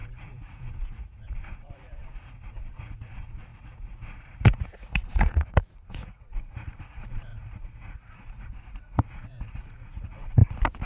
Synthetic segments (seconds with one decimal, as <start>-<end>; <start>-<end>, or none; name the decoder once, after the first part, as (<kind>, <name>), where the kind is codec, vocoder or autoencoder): 0.0-10.4 (vocoder, Vocos)